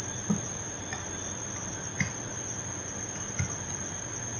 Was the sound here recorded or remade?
recorded